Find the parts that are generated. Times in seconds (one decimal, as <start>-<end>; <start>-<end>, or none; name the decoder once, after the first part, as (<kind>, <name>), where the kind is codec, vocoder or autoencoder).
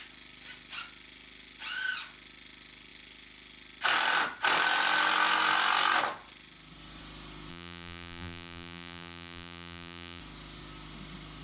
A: 7.5-10.2 (vocoder, BigVGAN v2)